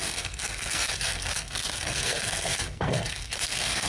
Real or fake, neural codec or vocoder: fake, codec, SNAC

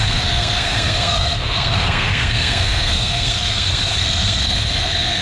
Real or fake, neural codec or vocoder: fake, codec, SNAC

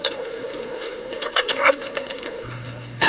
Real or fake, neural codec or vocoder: fake, codec, SNAC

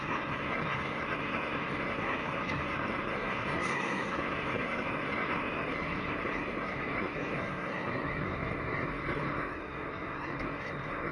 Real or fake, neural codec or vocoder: fake, codec, SNAC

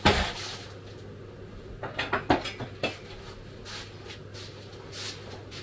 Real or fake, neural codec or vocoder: real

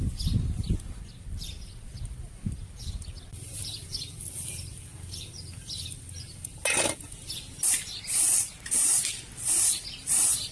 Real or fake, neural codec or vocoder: real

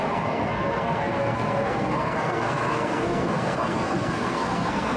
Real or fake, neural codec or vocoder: fake, codec, SNAC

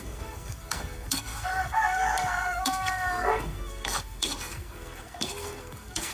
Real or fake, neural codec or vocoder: fake, codec, SNAC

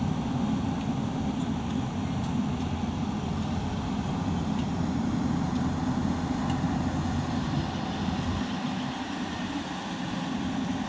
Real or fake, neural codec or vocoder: real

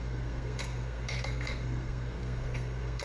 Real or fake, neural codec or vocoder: fake, codec, SNAC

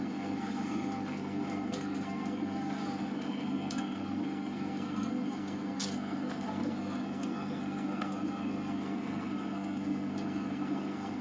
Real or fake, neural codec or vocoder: fake, codec, SNAC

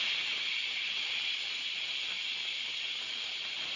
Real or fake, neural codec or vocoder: real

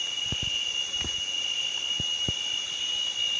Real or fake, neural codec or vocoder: real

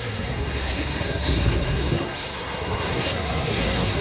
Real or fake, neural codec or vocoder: fake, codec, SNAC